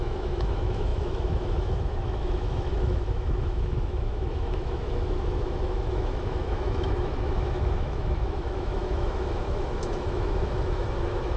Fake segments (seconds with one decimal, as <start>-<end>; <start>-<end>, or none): 0.0-11.4